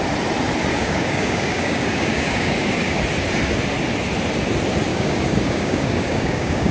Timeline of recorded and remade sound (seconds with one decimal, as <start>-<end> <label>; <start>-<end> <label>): 0.0-0.7 recorded; 0.7-3.0 remade; 3.0-4.9 recorded; 4.9-6.7 remade